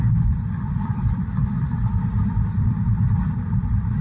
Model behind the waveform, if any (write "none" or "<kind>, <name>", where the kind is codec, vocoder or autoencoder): vocoder, BigVGAN v2